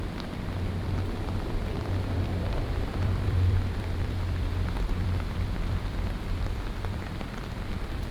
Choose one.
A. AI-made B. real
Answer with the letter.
A